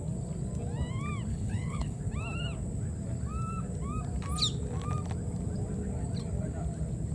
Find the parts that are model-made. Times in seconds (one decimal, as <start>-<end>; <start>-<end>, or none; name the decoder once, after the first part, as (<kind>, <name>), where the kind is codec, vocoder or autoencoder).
1.3-2.0 (codec, HILCodec)